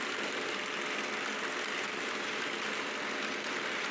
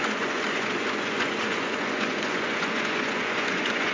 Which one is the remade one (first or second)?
second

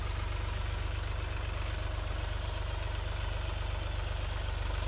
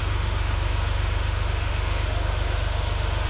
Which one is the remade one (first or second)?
second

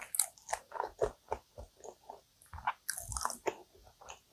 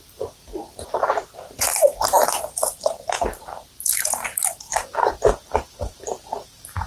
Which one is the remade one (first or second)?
second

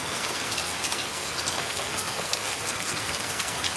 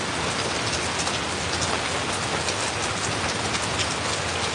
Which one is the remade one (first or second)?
first